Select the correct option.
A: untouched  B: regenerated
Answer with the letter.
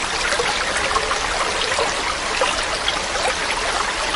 A